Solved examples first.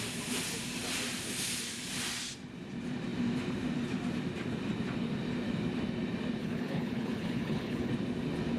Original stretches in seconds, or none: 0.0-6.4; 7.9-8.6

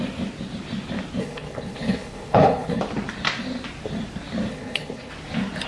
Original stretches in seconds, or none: 0.0-1.2; 2.8-4.5; 5.1-5.7

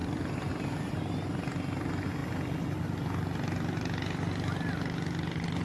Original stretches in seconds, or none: 0.0-5.6

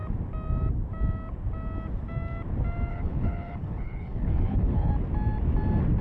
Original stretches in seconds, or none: 0.0-2.9; 4.9-6.0

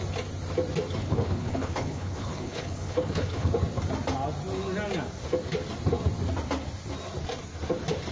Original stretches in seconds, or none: 0.0-1.0; 3.5-8.1

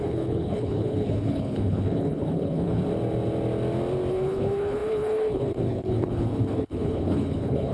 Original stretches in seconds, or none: 2.8-4.1